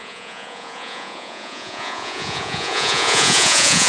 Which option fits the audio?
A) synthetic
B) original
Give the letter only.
A